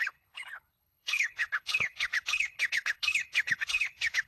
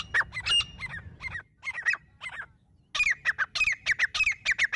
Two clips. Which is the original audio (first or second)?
second